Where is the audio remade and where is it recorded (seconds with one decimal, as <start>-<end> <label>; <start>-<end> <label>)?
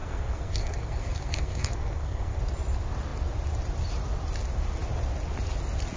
0.0-2.4 remade; 2.4-6.0 recorded